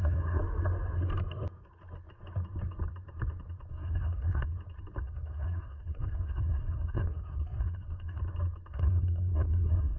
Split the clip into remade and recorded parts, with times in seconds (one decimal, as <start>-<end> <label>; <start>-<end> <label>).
0.0-0.4 remade; 0.4-3.7 recorded; 3.7-4.5 remade; 4.5-5.0 recorded; 5.0-8.2 remade; 8.2-8.7 recorded; 8.7-10.0 remade